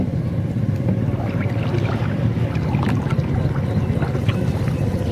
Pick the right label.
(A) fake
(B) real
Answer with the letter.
B